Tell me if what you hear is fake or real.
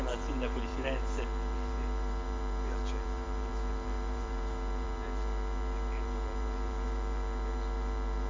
fake